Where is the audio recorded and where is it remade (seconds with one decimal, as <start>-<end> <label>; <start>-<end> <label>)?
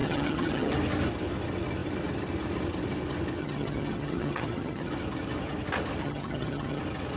0.0-0.7 remade; 0.7-3.4 recorded; 3.4-4.9 remade; 4.9-6.0 recorded; 6.0-6.8 remade; 6.8-7.2 recorded